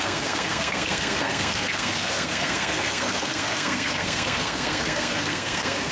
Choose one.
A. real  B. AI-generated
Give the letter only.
B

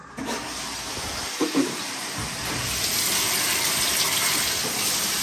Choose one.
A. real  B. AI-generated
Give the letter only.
A